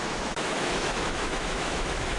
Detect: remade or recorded remade